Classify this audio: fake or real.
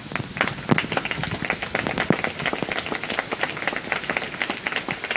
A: real